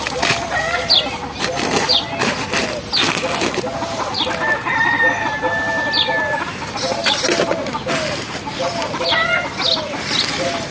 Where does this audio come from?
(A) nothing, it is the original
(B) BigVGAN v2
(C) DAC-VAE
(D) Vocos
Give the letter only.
A